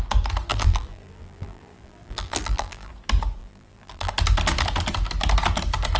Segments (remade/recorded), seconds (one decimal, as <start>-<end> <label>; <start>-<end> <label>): 0.0-0.5 recorded; 0.5-2.9 remade; 2.9-3.4 recorded; 3.4-4.1 remade; 4.1-6.0 recorded